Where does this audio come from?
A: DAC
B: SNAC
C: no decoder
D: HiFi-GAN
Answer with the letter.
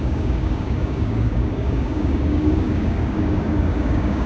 A